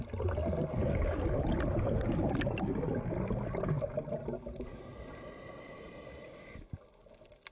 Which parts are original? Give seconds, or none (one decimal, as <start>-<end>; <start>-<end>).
0.0-6.1; 6.7-7.5